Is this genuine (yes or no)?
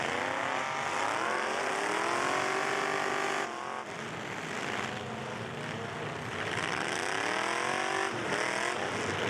yes